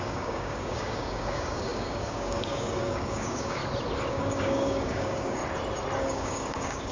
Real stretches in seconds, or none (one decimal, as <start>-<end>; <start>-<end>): 3.6-4.1; 5.4-6.0